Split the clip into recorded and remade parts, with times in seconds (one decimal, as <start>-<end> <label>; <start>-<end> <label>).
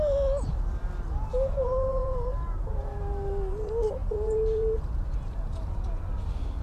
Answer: 0.0-1.3 recorded; 1.3-3.0 remade; 3.0-4.0 recorded; 4.0-6.0 remade; 6.0-6.6 recorded